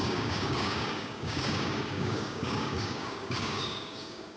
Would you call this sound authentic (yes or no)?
no